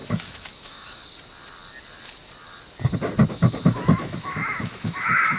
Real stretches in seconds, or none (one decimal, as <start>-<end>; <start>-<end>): 1.0-3.3

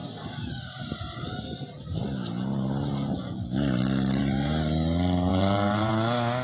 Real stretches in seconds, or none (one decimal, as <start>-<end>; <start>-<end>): 0.0-5.3; 5.9-6.4

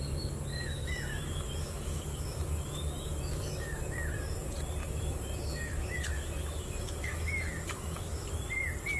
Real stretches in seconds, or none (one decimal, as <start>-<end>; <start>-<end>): 0.0-0.5; 3.8-4.8; 8.3-9.0

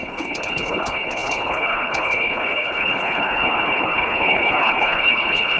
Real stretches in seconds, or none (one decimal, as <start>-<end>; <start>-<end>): none

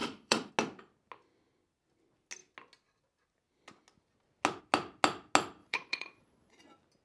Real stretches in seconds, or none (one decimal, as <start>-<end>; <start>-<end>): 0.5-5.6; 6.6-7.0

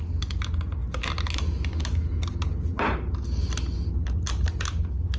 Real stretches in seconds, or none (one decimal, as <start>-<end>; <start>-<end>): 0.0-5.2

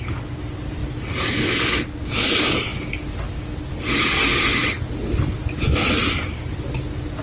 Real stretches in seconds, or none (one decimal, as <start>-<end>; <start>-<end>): 0.0-7.2